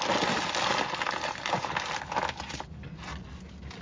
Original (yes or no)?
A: yes